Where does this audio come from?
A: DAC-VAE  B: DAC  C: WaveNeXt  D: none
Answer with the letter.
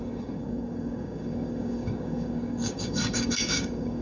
B